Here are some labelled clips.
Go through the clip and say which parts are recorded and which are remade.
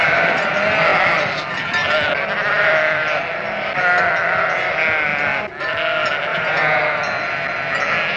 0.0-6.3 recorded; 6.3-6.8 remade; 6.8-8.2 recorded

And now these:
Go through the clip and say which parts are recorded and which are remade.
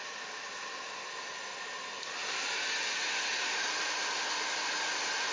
0.0-5.3 recorded